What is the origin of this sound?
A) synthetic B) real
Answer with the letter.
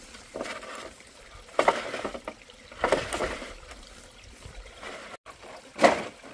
B